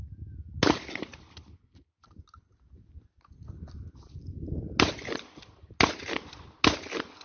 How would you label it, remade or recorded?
recorded